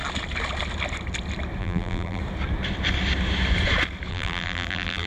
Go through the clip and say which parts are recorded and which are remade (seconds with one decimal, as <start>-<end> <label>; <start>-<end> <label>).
0.0-1.6 recorded; 1.6-2.2 remade; 2.2-4.1 recorded; 4.1-5.1 remade